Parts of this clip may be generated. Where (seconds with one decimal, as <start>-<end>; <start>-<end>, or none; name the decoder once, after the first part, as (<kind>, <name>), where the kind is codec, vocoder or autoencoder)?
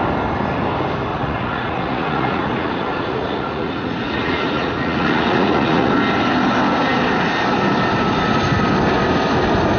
1.1-5.9 (vocoder, Vocos)